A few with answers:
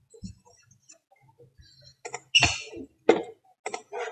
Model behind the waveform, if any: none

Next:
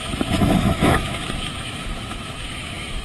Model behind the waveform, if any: autoencoder, DAC-VAE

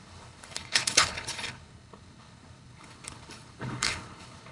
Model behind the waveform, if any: codec, HILCodec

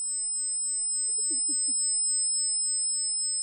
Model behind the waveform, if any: none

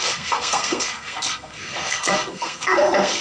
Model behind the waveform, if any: codec, SNAC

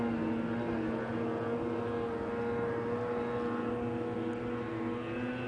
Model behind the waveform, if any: none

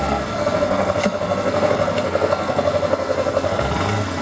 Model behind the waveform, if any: codec, SNAC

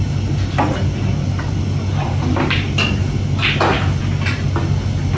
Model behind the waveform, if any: none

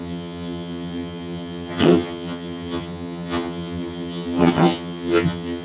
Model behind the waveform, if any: vocoder, HiFi-GAN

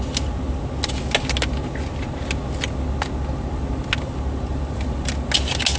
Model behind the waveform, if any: none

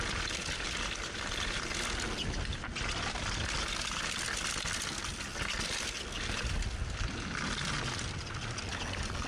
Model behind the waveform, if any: none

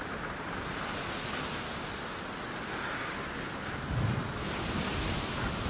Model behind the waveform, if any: none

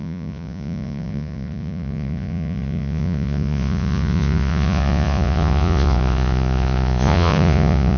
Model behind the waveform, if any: vocoder, Vocos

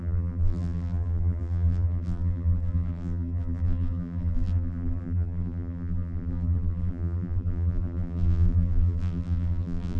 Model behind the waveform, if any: vocoder, BigVGAN v2